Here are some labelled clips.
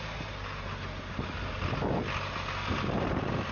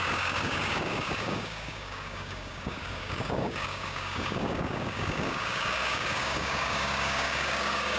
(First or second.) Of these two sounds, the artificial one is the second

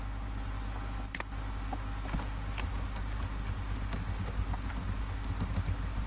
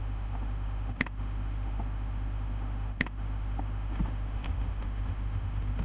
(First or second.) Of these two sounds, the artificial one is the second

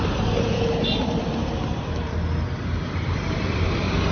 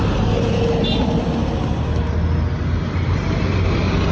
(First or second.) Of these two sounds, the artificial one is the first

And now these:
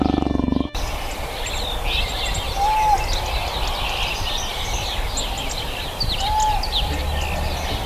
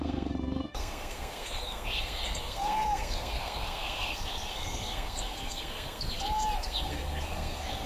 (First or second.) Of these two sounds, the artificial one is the second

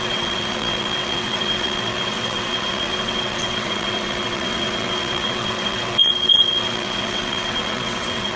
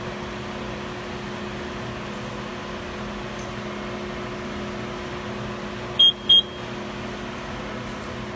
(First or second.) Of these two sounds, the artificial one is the first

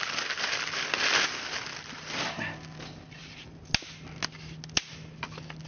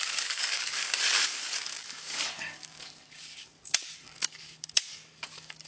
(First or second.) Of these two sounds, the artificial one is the second